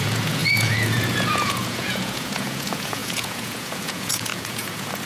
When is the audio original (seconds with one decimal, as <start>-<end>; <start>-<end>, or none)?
none